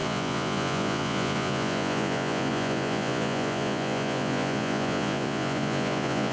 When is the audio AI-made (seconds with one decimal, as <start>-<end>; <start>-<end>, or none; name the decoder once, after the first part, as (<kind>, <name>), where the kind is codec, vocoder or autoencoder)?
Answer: 0.0-6.3 (vocoder, Vocos)